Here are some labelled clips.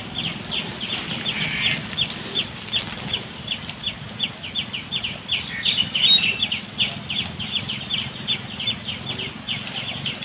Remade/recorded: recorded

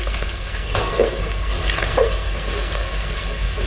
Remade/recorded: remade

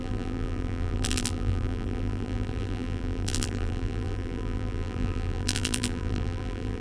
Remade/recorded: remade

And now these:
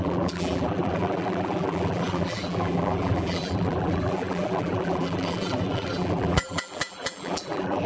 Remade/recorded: remade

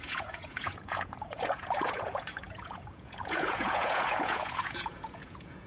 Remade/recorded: remade